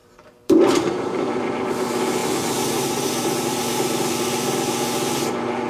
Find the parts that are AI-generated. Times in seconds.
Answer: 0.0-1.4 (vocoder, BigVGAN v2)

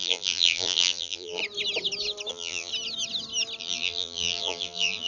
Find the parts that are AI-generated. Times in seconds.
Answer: 0.0-1.4 (vocoder, BigVGAN v2); 2.3-2.7; 3.6-5.1